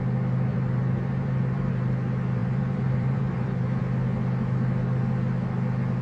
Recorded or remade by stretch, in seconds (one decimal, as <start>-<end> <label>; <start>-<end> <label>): 0.0-0.5 recorded; 0.5-1.7 remade; 1.7-2.4 recorded; 2.4-3.8 remade; 3.8-6.0 recorded